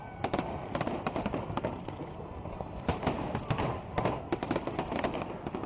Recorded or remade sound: recorded